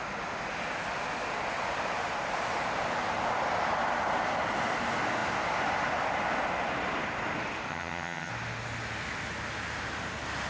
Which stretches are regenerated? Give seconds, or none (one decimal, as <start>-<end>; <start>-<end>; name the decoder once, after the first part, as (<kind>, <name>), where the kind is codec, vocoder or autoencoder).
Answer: 7.7-8.3 (vocoder, HiFi-GAN)